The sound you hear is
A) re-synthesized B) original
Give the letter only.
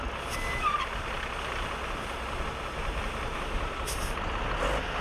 B